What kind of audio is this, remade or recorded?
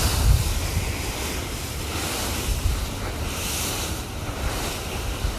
recorded